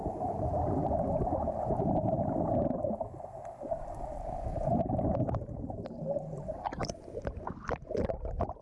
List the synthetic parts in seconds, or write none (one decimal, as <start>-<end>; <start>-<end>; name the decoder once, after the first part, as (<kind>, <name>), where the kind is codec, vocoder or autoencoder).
none